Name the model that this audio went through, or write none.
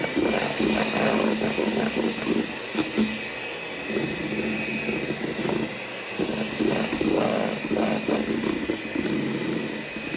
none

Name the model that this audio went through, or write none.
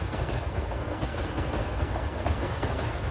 codec, SNAC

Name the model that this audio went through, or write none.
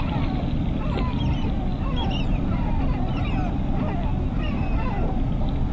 none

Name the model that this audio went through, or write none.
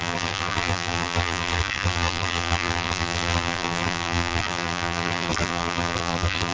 vocoder, BigVGAN v2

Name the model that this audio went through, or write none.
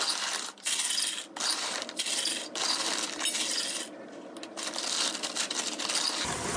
none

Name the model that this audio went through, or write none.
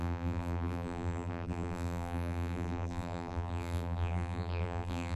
vocoder, BigVGAN v2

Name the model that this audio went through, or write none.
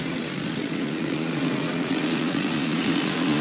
vocoder, Vocos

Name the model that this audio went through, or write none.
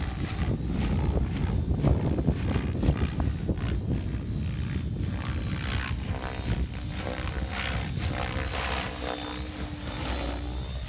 none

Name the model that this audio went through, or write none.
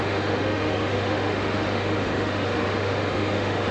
autoencoder, DAC-VAE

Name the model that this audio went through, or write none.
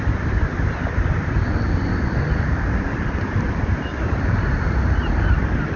none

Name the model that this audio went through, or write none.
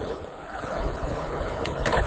codec, HILCodec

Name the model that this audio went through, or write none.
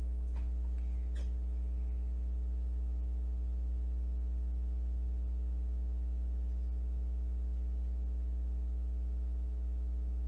none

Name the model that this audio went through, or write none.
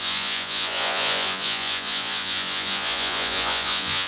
vocoder, Vocos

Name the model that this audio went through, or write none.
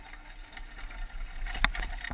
none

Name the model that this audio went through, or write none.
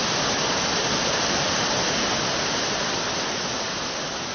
none